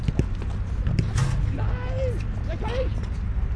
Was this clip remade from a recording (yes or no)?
no